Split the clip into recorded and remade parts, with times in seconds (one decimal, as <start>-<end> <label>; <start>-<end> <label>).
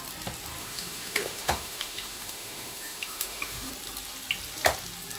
0.0-0.6 recorded; 0.6-3.7 remade; 3.7-5.2 recorded